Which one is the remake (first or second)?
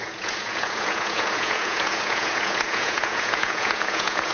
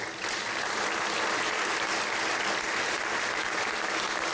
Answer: first